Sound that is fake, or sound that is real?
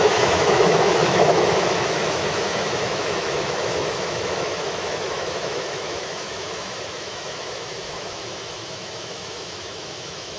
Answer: fake